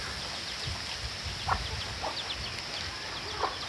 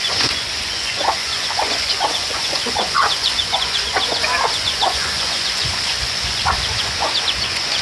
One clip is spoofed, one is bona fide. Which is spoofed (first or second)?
second